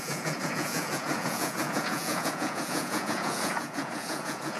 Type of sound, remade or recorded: remade